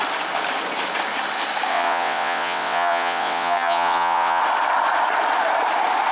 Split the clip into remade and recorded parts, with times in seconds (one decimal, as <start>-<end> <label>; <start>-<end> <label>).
0.0-1.7 recorded; 1.7-4.4 remade; 4.4-6.1 recorded